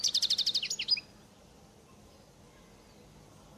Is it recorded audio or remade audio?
recorded